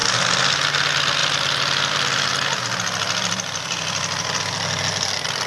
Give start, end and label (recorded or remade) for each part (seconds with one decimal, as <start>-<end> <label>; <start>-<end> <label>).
0.0-0.5 remade; 0.5-1.2 recorded; 1.2-4.5 remade; 4.5-5.5 recorded